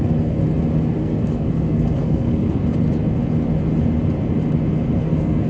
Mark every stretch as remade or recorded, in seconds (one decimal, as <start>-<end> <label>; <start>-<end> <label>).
0.0-0.4 remade; 0.4-1.0 recorded; 1.0-2.6 remade; 2.6-5.0 recorded; 5.0-5.5 remade